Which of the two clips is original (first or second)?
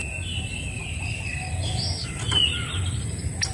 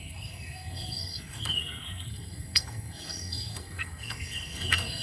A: first